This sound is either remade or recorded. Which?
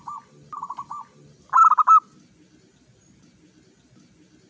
recorded